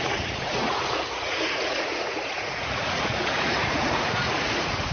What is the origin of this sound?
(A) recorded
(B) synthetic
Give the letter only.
B